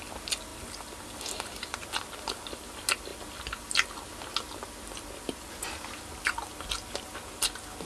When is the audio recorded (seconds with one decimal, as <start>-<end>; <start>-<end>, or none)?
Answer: 0.0-7.9